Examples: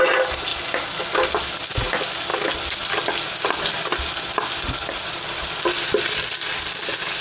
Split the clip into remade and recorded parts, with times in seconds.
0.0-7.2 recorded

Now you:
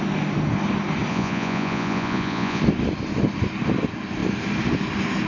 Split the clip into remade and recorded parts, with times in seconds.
0.0-1.1 recorded; 1.1-2.6 remade; 2.6-5.3 recorded

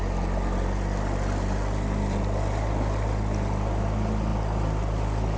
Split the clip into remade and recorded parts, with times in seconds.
0.0-5.4 recorded

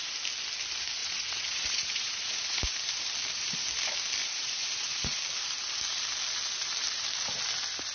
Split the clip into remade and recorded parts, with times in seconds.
0.0-1.0 recorded; 1.0-2.6 remade; 2.6-4.2 recorded; 4.2-5.2 remade; 5.2-7.9 recorded